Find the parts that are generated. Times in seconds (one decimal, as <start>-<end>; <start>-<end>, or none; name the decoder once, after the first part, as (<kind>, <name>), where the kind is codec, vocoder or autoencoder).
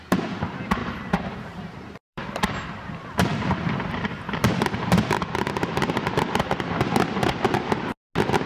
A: 0.0-4.5 (vocoder, BigVGAN v2)